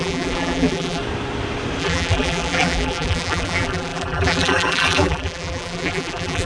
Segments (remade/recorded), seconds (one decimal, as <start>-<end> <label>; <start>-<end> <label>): 0.0-1.0 remade; 1.0-1.8 recorded; 1.8-6.5 remade